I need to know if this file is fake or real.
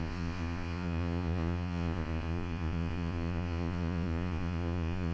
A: fake